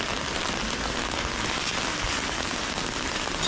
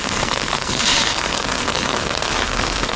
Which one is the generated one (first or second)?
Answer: second